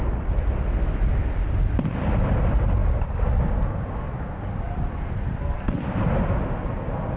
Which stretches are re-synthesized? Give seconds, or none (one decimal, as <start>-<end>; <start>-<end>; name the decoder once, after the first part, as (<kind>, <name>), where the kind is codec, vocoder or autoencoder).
none